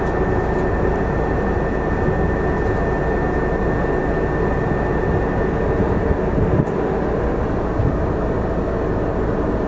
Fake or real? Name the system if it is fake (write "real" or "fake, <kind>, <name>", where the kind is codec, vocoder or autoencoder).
real